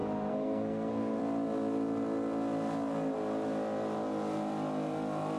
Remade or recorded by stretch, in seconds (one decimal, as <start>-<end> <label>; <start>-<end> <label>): 0.0-1.2 remade; 1.2-5.4 recorded